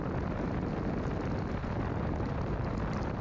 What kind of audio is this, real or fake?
real